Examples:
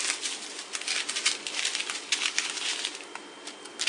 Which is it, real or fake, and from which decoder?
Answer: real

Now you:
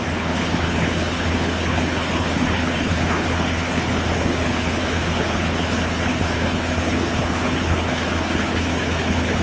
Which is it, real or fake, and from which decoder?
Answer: fake, codec, HILCodec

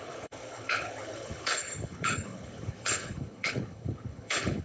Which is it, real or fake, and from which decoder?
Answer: fake, codec, HILCodec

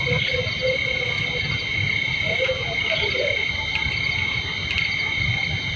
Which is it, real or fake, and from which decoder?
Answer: real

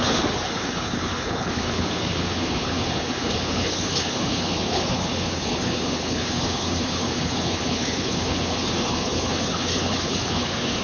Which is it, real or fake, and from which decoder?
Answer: fake, codec, HILCodec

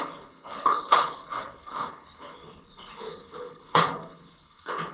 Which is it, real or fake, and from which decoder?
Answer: fake, codec, HILCodec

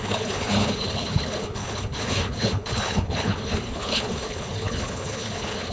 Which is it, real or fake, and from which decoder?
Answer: fake, codec, HILCodec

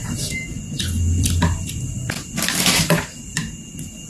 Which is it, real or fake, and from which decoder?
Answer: real